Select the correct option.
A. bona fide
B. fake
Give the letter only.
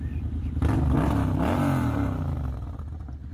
A